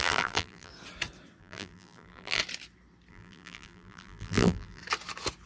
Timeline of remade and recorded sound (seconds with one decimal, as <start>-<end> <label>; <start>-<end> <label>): 0.0-0.7 remade; 0.7-1.4 recorded; 1.4-2.4 remade; 2.4-3.1 recorded; 3.1-4.8 remade; 4.8-5.5 recorded